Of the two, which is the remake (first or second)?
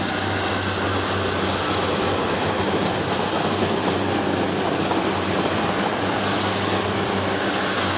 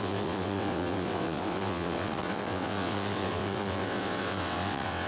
second